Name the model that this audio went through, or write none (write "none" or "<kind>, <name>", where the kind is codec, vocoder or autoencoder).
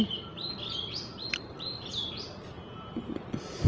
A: none